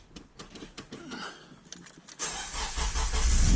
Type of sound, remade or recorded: recorded